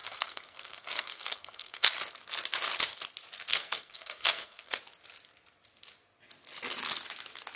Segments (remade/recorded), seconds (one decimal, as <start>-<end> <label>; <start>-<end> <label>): 0.0-1.9 remade; 1.9-3.5 recorded; 3.5-4.8 remade; 4.8-7.6 recorded